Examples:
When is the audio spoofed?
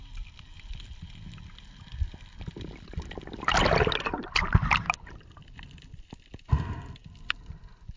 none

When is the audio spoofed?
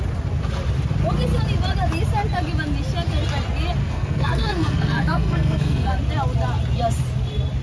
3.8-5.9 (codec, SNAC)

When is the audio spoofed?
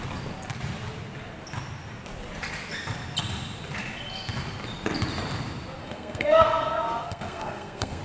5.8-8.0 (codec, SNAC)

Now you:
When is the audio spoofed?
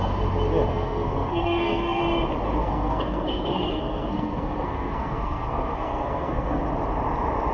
0.7-2.0 (codec, SNAC); 2.6-6.6